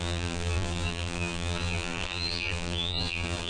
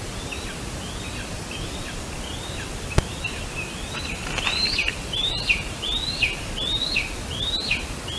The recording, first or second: second